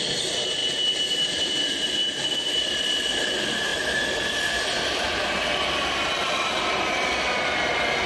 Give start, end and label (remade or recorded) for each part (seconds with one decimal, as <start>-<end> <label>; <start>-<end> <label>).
0.0-0.6 remade; 0.6-2.5 recorded; 2.5-8.1 remade